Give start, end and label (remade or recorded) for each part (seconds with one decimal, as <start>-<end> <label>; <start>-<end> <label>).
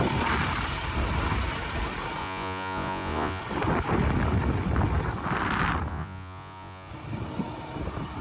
0.0-2.2 recorded; 2.2-3.4 remade; 3.4-5.9 recorded; 5.9-6.9 remade; 6.9-8.2 recorded